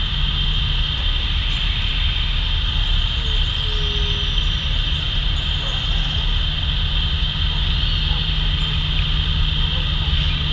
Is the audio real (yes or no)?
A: yes